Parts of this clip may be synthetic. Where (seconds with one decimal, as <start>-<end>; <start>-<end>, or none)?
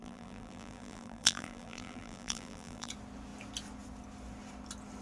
0.0-2.9